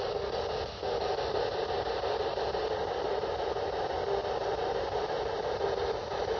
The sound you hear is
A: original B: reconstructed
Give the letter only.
A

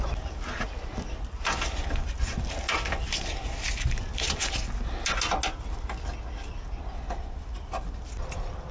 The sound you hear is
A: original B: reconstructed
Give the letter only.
A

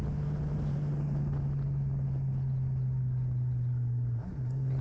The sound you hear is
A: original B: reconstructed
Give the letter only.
A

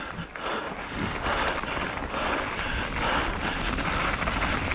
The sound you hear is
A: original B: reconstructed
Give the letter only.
A